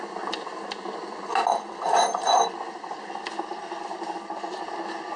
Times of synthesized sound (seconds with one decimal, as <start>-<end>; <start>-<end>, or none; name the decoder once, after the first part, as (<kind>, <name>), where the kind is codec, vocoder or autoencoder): 1.5-4.6 (vocoder, BigVGAN v2)